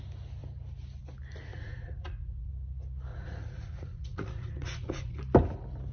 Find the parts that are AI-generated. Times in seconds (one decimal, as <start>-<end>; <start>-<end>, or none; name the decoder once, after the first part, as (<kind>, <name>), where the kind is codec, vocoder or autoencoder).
1.5-2.5 (vocoder, Vocos); 3.1-5.2

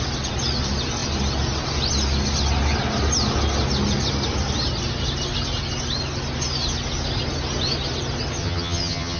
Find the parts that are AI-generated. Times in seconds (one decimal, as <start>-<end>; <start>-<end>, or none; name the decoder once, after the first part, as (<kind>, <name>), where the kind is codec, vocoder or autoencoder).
8.4-9.2 (vocoder, HiFi-GAN)

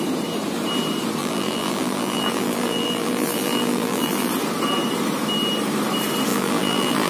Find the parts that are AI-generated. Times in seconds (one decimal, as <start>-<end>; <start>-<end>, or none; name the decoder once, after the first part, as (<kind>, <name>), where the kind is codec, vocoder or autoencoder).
1.2-4.3 (vocoder, BigVGAN v2); 6.3-7.1

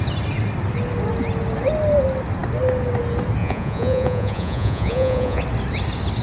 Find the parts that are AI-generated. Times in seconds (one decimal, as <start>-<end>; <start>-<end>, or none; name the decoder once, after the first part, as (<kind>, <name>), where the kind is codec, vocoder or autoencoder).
3.4-5.4 (vocoder, Vocos)

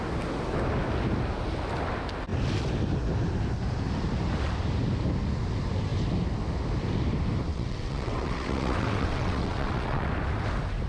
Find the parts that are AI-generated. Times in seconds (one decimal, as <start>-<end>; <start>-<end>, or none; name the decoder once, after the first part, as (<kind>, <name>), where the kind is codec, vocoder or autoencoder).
7.5-10.1 (vocoder, WaveNeXt)